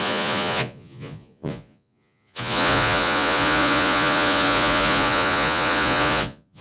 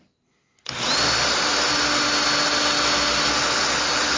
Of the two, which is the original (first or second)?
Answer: second